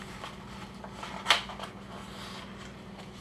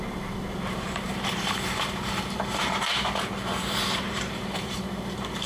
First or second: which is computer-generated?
second